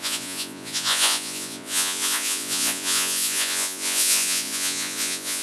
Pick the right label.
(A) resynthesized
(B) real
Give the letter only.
A